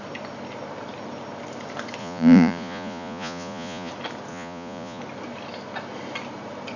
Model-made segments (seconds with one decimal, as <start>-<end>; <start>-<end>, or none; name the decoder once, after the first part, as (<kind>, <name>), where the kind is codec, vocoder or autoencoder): 2.0-3.9 (vocoder, Vocos); 4.3-5.0